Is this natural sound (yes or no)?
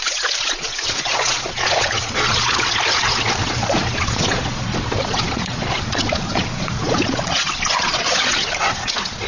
no